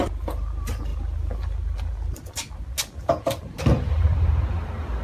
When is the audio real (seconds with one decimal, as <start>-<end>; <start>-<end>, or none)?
0.0-5.0